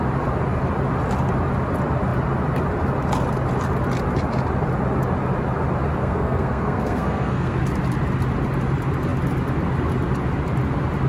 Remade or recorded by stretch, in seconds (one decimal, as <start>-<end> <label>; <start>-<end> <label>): 0.0-6.0 recorded; 6.0-7.6 remade; 7.6-11.1 recorded